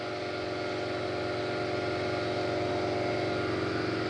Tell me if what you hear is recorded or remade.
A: recorded